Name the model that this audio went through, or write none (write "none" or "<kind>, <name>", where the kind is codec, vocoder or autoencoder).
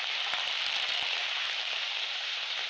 vocoder, BigVGAN v2